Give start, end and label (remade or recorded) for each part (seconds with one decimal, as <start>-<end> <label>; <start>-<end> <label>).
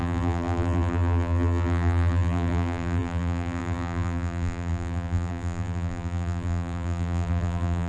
0.0-7.9 remade